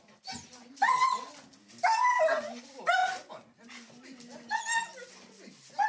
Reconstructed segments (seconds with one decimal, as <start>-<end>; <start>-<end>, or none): none